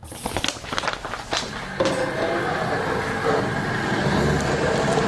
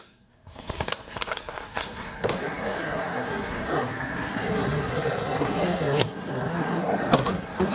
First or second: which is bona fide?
first